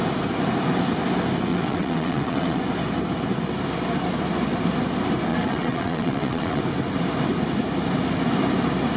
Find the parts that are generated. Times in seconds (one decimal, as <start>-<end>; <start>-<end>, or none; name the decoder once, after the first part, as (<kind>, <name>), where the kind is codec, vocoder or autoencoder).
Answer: 1.5-2.6 (vocoder, WaveNeXt); 5.3-6.6